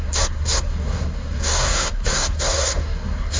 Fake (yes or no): yes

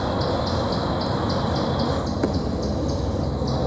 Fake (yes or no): no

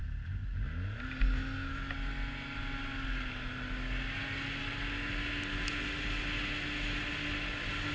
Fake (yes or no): no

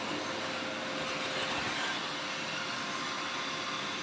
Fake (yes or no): no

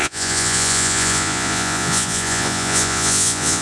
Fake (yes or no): yes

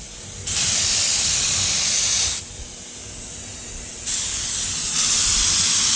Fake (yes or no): no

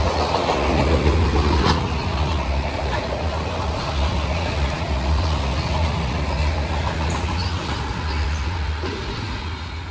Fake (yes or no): yes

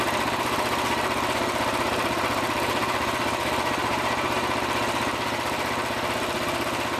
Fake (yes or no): yes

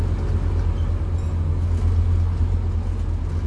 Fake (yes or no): no